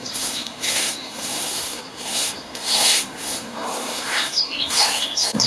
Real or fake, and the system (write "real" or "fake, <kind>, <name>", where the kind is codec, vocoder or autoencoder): fake, codec, SNAC